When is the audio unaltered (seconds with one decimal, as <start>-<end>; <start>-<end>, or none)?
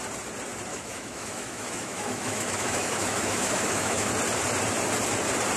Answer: 0.0-0.7; 4.1-5.6